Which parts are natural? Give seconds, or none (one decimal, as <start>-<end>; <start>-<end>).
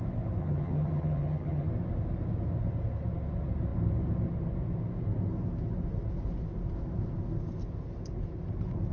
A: 0.0-0.4; 1.7-8.9